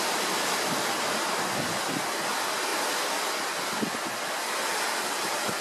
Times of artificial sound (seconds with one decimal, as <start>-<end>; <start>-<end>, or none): none